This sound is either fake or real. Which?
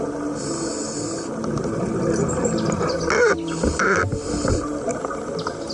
real